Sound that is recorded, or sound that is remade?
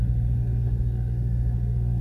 remade